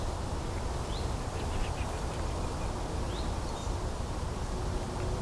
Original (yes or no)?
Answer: yes